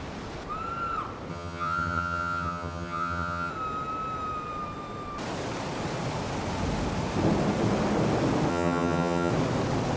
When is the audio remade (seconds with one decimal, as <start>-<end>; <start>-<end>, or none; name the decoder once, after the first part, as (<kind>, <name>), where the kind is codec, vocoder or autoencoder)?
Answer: 1.3-3.5 (vocoder, HiFi-GAN); 8.5-9.3